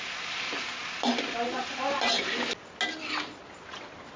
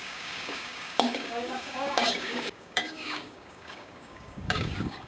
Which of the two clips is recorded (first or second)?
first